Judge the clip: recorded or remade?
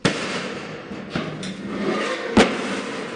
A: recorded